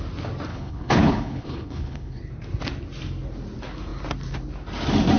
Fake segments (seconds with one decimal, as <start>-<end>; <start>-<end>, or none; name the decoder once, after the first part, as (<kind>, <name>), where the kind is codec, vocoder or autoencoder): 0.5-2.2 (codec, HILCodec)